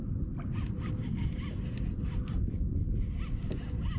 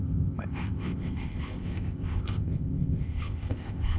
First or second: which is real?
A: first